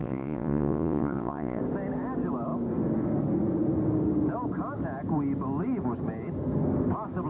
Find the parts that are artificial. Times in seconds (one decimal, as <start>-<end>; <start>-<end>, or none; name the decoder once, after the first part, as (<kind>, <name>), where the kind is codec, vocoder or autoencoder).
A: 0.0-1.6 (vocoder, Vocos)